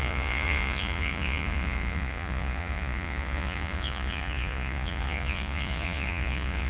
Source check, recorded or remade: remade